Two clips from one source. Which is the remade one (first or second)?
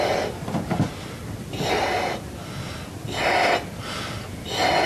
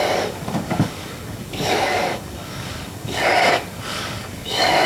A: second